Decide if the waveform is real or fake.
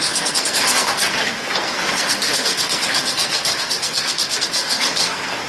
fake